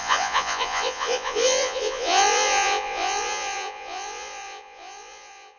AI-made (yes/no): yes